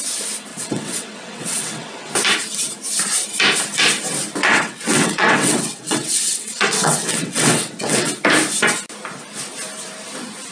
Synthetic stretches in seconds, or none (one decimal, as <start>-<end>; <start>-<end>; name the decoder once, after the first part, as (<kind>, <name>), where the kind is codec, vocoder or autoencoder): 0.5-2.1 (vocoder, WaveNeXt); 4.4-8.1